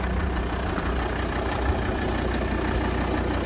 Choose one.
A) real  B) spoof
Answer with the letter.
A